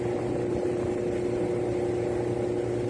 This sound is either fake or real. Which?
real